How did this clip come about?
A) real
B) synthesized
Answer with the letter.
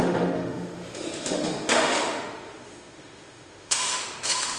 B